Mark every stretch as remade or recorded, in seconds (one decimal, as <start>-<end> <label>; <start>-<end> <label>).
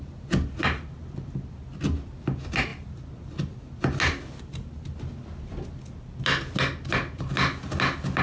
0.0-8.2 recorded